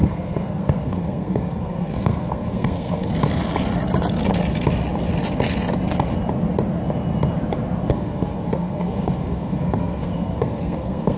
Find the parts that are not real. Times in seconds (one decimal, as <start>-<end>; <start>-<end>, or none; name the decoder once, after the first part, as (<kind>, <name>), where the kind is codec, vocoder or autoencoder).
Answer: 0.0-3.1 (codec, SNAC); 7.9-11.2